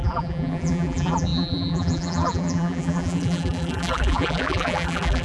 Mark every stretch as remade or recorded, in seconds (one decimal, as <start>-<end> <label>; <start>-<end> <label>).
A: 0.0-5.2 remade